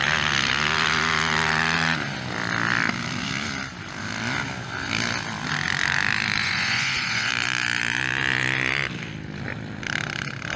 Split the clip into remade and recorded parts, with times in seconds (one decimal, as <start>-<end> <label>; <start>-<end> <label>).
0.0-6.4 recorded; 6.4-7.3 remade; 7.3-10.6 recorded